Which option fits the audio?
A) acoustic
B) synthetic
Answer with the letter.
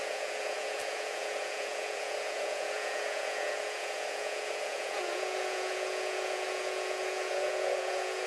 B